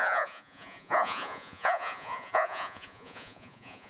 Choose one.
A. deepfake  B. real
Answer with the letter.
A